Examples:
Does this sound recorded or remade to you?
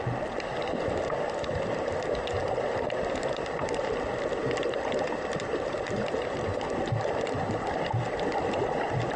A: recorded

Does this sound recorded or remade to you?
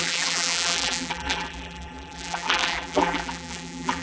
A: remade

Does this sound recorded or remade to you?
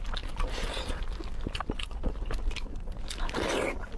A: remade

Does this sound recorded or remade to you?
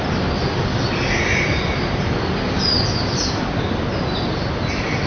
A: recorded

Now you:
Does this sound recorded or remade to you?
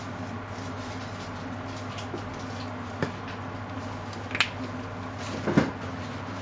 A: recorded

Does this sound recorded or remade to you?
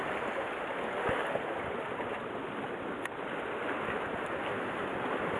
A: recorded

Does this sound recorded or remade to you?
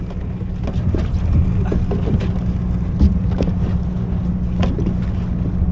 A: recorded